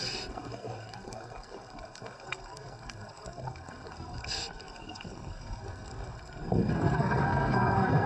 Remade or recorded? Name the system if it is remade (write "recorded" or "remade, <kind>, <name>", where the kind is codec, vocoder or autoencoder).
remade, codec, SNAC